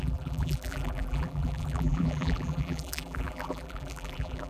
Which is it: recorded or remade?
remade